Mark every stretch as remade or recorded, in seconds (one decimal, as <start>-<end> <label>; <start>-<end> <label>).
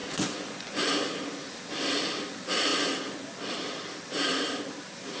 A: 0.0-0.9 remade; 0.9-5.2 recorded